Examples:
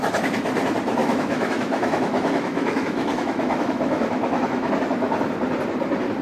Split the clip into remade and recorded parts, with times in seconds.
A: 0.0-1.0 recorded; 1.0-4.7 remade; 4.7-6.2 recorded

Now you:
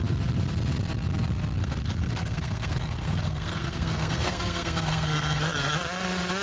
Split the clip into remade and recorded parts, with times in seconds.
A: 0.0-1.6 recorded; 1.6-5.4 remade; 5.4-6.4 recorded